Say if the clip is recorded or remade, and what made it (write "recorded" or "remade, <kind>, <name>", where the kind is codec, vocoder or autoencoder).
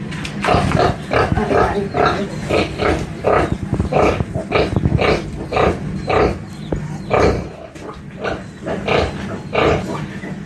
recorded